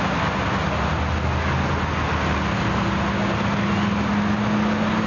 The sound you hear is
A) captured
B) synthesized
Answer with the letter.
A